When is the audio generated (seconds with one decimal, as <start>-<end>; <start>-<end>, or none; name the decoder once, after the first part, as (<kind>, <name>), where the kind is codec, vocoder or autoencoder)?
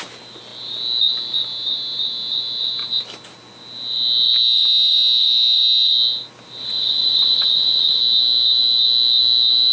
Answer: 6.6-8.0 (vocoder, Vocos)